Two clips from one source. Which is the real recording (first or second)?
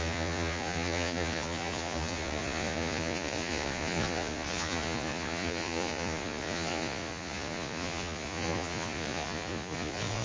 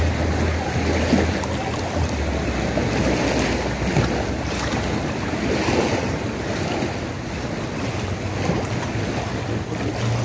second